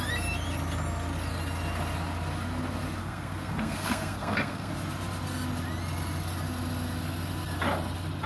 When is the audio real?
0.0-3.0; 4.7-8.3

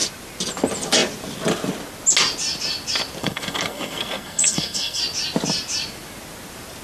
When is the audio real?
0.0-3.2; 5.0-6.8